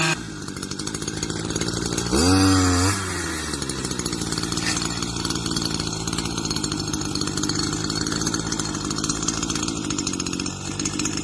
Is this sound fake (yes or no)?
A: no